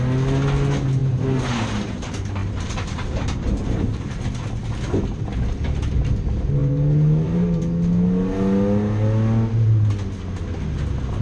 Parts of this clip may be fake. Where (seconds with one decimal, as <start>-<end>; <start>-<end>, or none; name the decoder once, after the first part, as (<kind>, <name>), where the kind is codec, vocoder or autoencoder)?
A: 1.0-2.0 (vocoder, BigVGAN v2); 2.4-4.1; 6.6-7.6